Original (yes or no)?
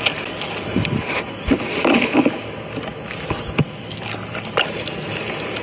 yes